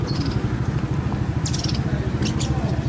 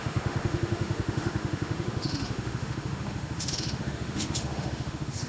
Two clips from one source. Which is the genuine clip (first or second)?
first